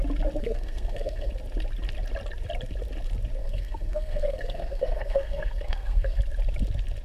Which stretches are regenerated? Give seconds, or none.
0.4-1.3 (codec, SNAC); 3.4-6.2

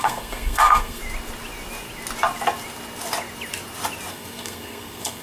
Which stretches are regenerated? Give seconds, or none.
0.0-1.0 (codec, SNAC); 4.1-5.2

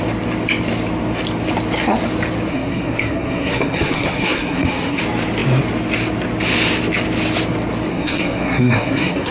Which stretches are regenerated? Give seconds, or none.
2.5-5.0 (codec, SNAC); 7.9-9.3